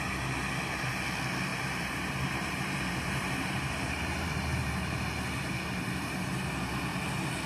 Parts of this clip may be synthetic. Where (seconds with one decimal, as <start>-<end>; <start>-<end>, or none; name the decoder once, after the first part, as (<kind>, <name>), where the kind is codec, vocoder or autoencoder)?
1.5-4.7 (vocoder, BigVGAN v2)

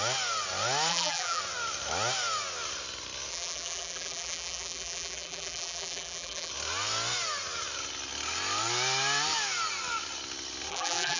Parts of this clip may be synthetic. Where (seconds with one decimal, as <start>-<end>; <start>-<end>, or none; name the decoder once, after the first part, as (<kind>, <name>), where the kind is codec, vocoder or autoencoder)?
0.9-1.4 (vocoder, BigVGAN v2); 3.3-6.5; 10.7-11.2

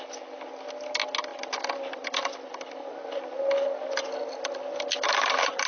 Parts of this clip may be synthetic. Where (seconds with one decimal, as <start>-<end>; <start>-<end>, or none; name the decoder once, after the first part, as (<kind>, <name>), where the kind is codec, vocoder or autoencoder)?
1.3-2.5 (vocoder, BigVGAN v2)